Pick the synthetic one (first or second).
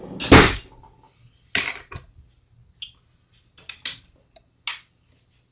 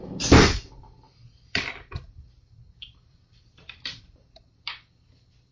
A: second